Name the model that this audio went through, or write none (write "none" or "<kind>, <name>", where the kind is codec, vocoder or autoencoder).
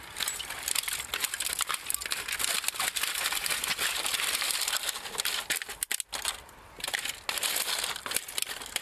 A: none